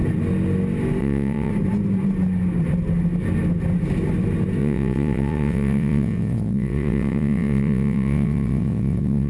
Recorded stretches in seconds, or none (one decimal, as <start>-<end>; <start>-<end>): 0.0-1.0; 1.5-4.6